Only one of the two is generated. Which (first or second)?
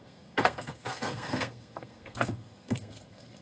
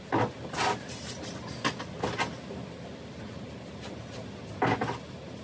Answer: first